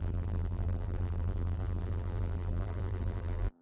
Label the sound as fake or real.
fake